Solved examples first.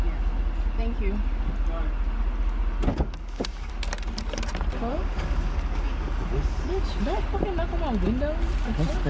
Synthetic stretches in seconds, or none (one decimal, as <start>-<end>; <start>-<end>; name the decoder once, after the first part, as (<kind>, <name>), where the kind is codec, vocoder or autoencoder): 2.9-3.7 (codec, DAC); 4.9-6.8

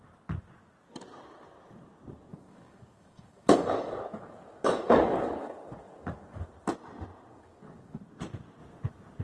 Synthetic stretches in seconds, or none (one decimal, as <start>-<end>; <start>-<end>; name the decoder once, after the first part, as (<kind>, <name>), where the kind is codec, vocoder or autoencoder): 2.3-6.5 (codec, DAC); 7.3-8.0

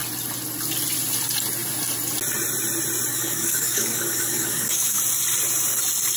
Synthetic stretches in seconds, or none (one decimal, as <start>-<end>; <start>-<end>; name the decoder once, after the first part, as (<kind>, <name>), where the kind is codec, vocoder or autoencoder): 3.1-5.0 (codec, DAC)

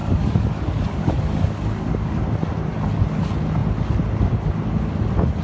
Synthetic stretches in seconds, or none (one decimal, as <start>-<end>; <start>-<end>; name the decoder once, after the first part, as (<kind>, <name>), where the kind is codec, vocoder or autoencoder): 0.0-2.2 (codec, DAC)

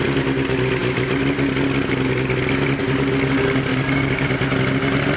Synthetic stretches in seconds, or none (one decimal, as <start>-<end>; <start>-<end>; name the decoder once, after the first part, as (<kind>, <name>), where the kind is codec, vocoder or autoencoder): 3.7-4.3 (codec, DAC)

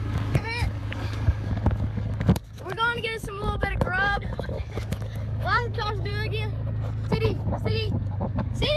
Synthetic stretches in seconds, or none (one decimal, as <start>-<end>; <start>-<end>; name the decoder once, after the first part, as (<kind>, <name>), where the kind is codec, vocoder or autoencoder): 0.0-6.1 (codec, DAC); 7.1-8.8

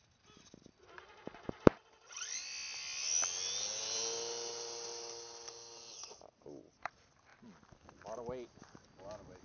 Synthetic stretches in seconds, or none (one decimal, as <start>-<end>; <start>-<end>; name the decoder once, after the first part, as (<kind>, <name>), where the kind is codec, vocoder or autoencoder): none